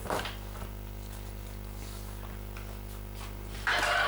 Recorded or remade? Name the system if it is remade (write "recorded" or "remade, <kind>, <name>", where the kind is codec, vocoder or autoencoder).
recorded